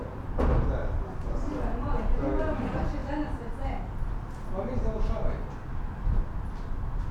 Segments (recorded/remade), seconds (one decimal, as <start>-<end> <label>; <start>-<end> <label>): 0.0-7.1 recorded